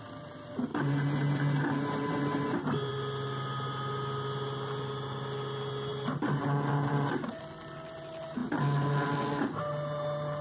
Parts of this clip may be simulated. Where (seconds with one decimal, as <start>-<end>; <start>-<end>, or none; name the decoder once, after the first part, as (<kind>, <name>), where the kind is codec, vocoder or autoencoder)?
none